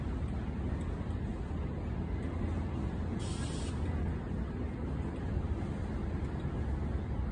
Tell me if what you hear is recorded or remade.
recorded